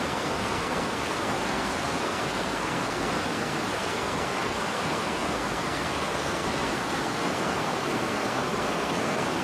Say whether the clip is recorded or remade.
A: remade